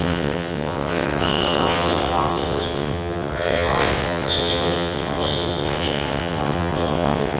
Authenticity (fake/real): fake